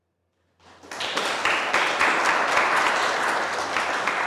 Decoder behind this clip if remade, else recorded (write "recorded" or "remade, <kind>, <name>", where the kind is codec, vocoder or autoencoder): recorded